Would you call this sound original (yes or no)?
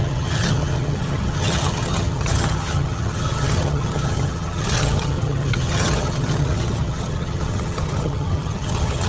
no